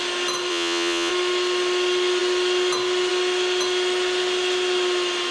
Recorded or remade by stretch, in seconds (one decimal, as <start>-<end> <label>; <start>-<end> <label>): 0.0-0.5 recorded; 0.5-1.1 remade; 1.1-5.3 recorded